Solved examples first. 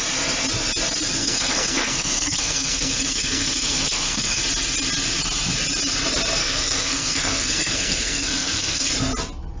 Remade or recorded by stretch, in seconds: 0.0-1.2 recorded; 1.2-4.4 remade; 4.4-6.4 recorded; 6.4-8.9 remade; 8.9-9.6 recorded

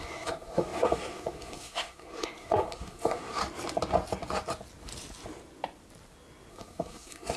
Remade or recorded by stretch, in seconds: 0.0-3.4 remade; 3.4-6.5 recorded; 6.5-7.4 remade

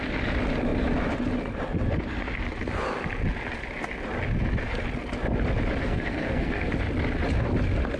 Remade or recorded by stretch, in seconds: 0.0-5.8 recorded; 5.8-6.7 remade; 6.7-8.0 recorded

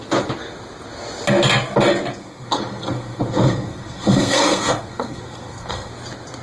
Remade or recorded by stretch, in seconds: 0.0-2.2 recorded; 2.2-5.9 remade; 5.9-6.4 recorded

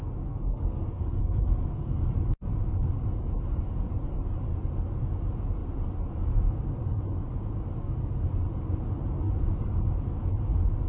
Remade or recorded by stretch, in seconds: 0.0-0.5 recorded; 0.5-1.9 remade; 1.9-10.9 recorded

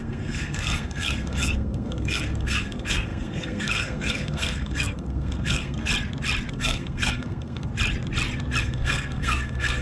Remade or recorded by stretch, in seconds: 0.0-5.9 remade; 5.9-6.5 recorded; 6.5-7.7 remade; 7.7-8.6 recorded; 8.6-9.8 remade

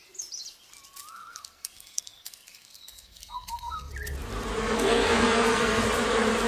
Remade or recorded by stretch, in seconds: 0.0-1.1 recorded; 1.1-3.9 remade; 3.9-4.6 recorded; 4.6-5.8 remade; 5.8-6.5 recorded